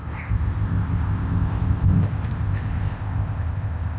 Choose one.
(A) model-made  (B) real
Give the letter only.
A